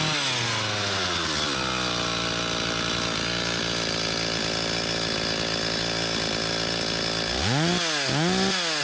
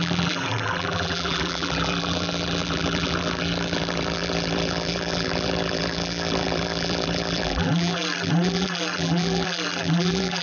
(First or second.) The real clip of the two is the first